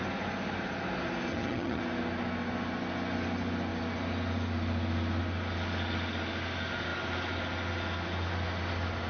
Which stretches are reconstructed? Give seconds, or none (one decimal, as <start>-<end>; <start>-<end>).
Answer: 1.3-1.8

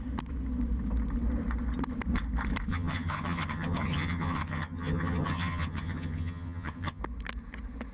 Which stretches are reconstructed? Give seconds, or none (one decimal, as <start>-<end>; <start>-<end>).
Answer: 2.7-7.0

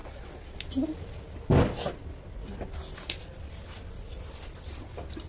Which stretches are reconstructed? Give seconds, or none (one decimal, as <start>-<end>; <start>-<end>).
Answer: none

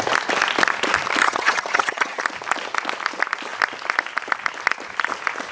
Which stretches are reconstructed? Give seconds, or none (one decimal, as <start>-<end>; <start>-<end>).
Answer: 1.2-2.2

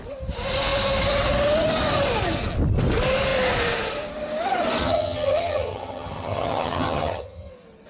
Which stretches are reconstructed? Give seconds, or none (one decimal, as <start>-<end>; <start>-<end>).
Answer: 4.8-7.5

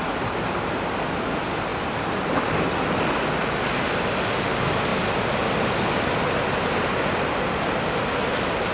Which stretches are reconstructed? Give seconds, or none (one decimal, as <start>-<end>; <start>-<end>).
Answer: none